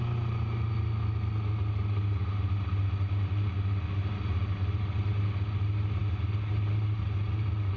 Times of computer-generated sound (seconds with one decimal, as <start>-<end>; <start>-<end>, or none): none